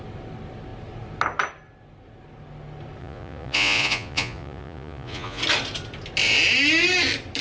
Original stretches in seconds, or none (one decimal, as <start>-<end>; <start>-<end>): 0.0-3.0; 5.4-7.4